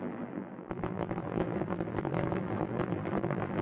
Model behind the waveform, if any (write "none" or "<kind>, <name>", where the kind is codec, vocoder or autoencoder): vocoder, BigVGAN v2